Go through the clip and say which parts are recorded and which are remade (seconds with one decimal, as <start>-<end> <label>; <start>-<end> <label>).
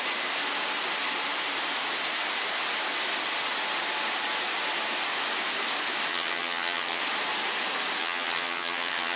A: 0.0-6.1 recorded; 6.1-7.0 remade; 7.0-8.0 recorded; 8.0-9.2 remade